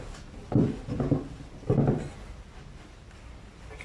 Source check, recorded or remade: recorded